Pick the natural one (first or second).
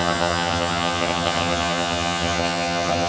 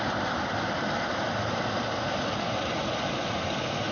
second